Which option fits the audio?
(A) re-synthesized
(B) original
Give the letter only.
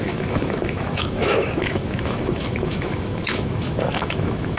A